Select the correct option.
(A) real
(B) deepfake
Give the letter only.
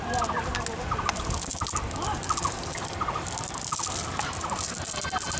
A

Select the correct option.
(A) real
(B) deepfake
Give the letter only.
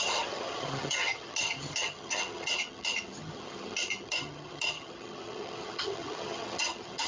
B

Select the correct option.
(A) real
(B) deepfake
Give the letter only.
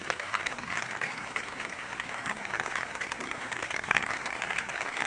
B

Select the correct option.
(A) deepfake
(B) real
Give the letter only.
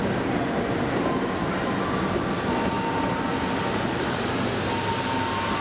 B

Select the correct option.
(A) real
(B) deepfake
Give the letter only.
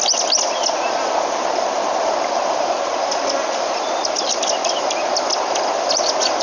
A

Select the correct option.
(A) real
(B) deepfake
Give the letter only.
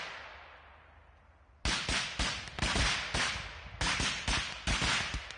A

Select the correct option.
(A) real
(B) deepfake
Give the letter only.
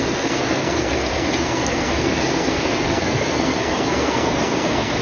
B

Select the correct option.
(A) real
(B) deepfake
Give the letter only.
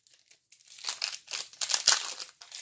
A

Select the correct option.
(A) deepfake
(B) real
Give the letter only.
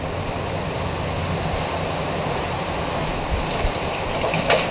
B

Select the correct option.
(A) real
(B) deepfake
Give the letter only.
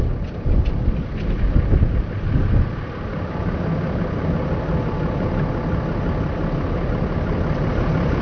A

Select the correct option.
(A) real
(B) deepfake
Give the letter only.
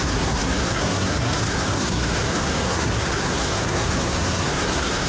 B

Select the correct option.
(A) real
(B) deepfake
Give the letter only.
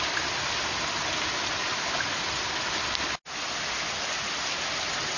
A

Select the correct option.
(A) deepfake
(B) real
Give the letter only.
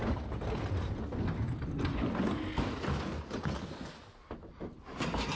B